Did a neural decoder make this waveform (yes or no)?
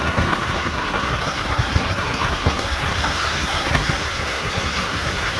yes